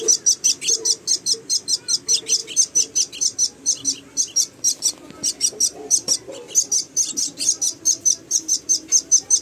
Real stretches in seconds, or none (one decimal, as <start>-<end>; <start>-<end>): 0.0-9.4